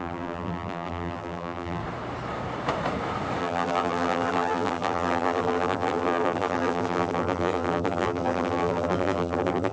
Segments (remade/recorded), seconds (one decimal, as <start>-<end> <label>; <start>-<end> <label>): 0.0-1.8 remade; 1.8-3.4 recorded; 3.4-9.7 remade